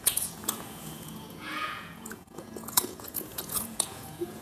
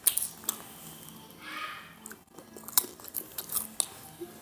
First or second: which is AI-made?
first